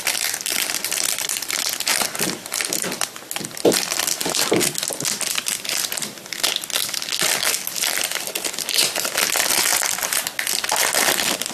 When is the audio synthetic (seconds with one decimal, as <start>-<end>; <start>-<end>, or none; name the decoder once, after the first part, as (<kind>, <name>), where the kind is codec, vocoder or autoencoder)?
none